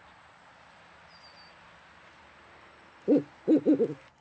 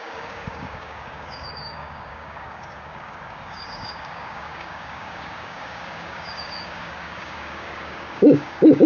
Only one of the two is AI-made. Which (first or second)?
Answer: second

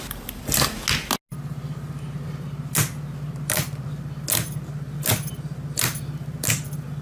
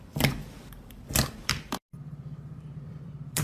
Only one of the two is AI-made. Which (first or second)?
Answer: second